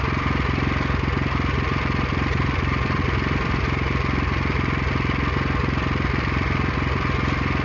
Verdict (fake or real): real